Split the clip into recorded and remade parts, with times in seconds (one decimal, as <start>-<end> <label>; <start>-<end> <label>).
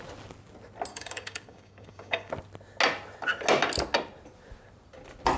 0.0-0.9 recorded; 0.9-2.3 remade; 2.3-5.4 recorded